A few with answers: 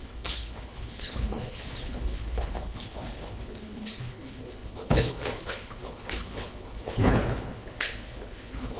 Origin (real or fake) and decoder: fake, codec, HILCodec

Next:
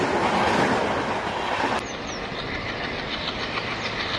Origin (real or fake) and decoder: real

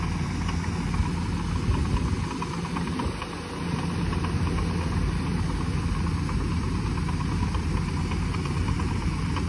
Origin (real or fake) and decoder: real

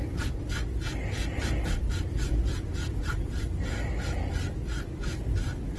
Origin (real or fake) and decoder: real